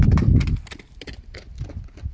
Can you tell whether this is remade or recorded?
recorded